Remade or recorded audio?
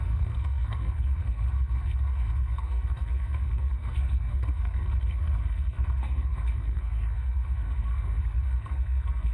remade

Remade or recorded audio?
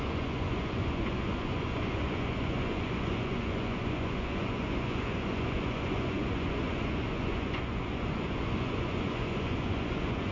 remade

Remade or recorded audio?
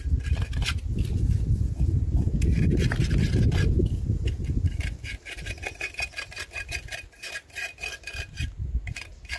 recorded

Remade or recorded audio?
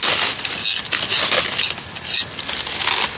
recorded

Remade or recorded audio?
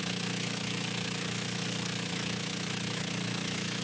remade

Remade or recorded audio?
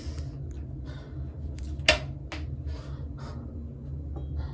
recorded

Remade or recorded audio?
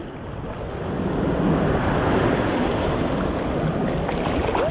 recorded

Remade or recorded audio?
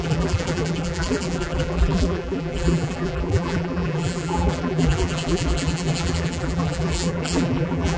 remade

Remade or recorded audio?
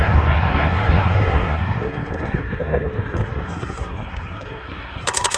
remade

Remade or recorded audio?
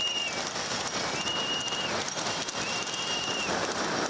recorded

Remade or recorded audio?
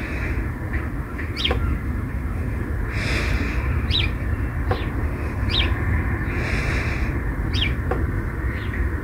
recorded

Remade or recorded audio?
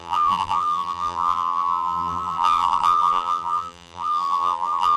remade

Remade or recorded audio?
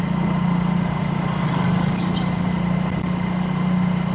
recorded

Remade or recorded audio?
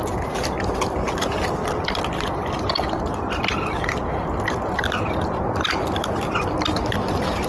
recorded